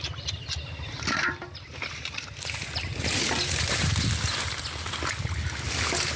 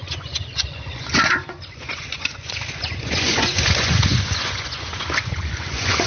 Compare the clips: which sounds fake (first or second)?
second